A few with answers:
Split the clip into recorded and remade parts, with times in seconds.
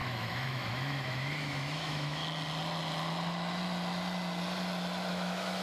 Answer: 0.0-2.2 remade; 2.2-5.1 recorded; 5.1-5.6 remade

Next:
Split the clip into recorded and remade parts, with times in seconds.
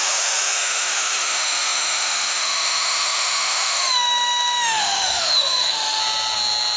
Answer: 0.0-6.0 remade; 6.0-6.8 recorded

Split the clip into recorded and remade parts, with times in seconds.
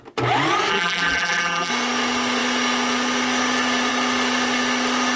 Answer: 0.0-0.7 recorded; 0.7-1.7 remade; 1.7-5.2 recorded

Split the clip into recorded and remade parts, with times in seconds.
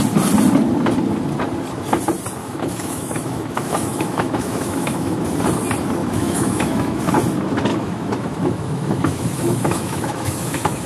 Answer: 0.0-2.4 recorded; 2.4-5.2 remade; 5.2-6.0 recorded; 6.0-7.1 remade; 7.1-7.7 recorded; 7.7-10.9 remade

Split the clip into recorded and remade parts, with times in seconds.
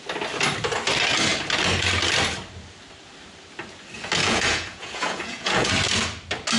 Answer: 0.0-4.2 recorded; 4.2-5.7 remade; 5.7-6.6 recorded